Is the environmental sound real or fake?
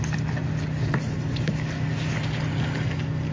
real